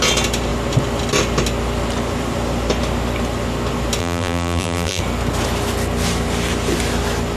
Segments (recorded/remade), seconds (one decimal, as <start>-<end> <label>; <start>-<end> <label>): 0.0-4.0 recorded; 4.0-5.0 remade; 5.0-7.4 recorded